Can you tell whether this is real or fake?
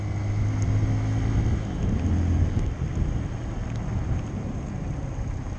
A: real